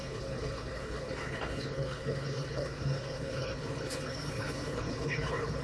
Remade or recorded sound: remade